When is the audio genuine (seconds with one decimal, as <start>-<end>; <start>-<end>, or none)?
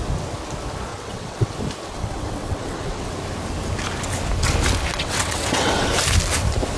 0.0-0.9; 1.5-1.9; 3.1-4.9; 5.9-6.8